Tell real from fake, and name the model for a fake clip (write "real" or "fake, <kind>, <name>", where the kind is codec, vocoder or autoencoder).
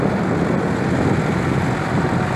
real